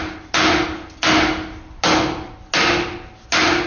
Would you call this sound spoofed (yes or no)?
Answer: no